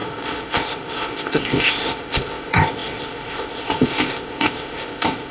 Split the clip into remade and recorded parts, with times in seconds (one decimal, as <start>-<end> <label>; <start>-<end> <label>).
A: 0.0-5.3 remade